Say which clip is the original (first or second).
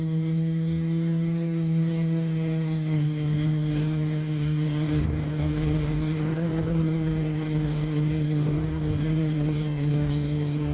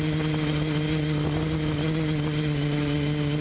second